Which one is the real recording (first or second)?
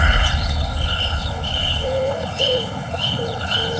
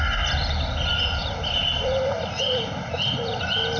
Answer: second